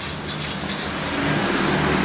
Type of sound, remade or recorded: recorded